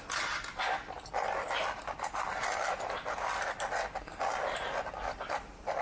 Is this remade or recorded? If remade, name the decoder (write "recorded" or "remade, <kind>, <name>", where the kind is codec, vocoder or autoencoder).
recorded